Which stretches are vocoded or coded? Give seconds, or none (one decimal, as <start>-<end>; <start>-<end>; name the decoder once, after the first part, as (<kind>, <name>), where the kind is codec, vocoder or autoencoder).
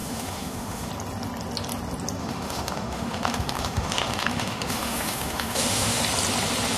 0.0-0.9 (autoencoder, DAC-VAE); 2.2-6.0